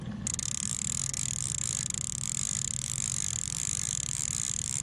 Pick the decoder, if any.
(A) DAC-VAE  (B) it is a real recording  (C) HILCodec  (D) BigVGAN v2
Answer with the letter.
B